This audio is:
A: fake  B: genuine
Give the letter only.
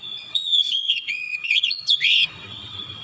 A